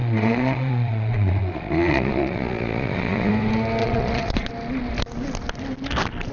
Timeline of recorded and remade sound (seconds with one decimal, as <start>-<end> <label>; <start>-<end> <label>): 0.0-3.3 remade; 3.3-3.8 recorded; 3.8-4.5 remade; 4.5-6.3 recorded